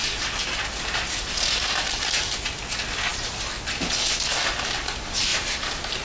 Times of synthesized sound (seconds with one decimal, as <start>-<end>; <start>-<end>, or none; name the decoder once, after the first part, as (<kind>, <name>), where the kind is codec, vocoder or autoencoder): 5.3-6.0 (vocoder, BigVGAN v2)